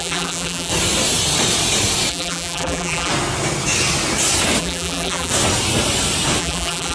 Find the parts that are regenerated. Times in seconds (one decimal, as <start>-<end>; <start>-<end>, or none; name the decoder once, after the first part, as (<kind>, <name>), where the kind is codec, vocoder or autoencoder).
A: 0.0-0.7 (vocoder, BigVGAN v2); 2.1-3.1; 4.6-5.3; 6.4-6.9